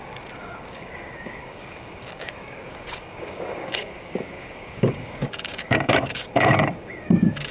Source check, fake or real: fake